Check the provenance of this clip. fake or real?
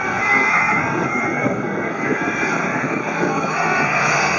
fake